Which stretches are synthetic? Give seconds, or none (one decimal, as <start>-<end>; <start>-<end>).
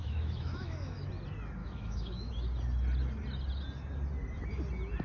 0.0-1.1; 1.6-2.3